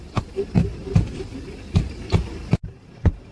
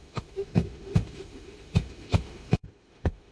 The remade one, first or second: second